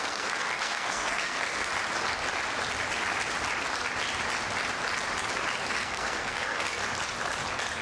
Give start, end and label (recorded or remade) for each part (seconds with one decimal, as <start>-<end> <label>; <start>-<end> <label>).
0.0-1.7 remade; 1.7-5.7 recorded; 5.7-6.8 remade; 6.8-7.8 recorded